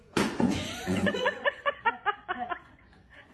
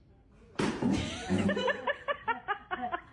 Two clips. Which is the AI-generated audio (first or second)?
first